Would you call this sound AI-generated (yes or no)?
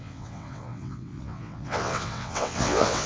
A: yes